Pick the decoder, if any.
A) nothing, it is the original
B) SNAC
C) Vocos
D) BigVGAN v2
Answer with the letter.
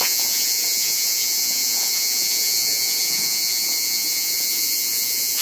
C